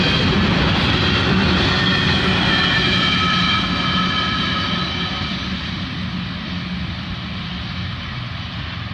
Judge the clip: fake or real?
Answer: real